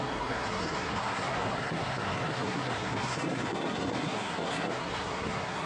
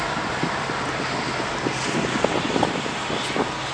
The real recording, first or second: second